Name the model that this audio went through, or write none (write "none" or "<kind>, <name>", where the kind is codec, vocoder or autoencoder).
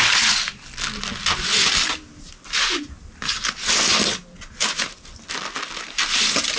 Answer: none